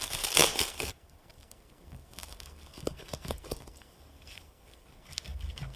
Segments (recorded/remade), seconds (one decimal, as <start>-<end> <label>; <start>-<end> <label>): 0.0-5.8 remade